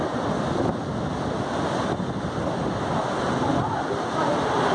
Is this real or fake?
real